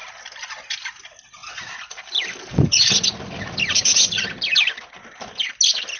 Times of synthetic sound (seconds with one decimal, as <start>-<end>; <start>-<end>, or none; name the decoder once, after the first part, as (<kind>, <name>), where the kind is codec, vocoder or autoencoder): none